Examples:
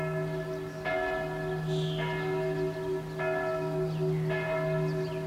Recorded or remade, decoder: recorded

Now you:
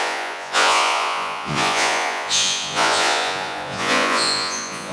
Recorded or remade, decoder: remade, vocoder, Vocos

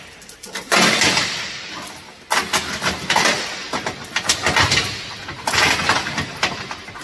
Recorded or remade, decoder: recorded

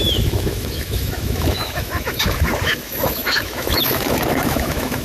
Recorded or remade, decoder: remade, autoencoder, DAC-VAE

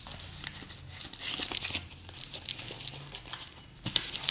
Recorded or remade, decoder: recorded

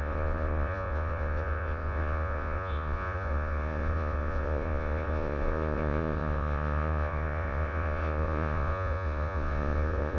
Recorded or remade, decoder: remade, vocoder, Vocos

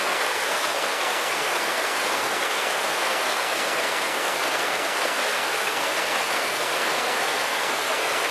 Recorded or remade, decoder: remade, codec, SNAC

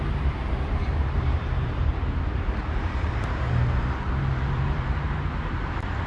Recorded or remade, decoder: remade, vocoder, BigVGAN v2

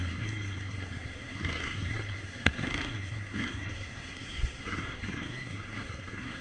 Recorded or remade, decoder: remade, codec, SNAC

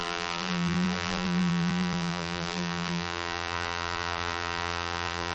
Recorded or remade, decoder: remade, vocoder, BigVGAN v2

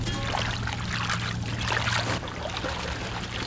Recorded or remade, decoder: recorded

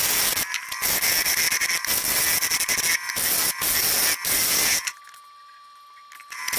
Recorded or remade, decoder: recorded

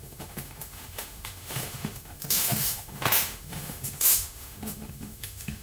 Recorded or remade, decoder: remade, autoencoder, DAC-VAE